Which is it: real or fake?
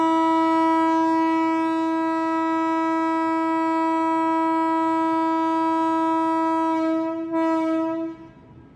real